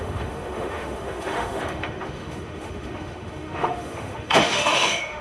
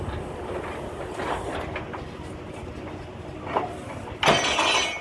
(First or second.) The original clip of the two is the second